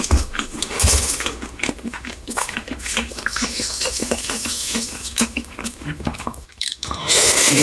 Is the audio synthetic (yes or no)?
yes